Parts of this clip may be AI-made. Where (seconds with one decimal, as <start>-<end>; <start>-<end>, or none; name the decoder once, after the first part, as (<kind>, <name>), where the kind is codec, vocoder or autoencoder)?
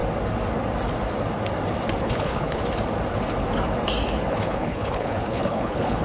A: 2.0-2.6 (codec, HILCodec); 4.3-6.0